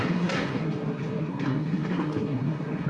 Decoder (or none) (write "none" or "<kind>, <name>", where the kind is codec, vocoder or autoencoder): codec, SNAC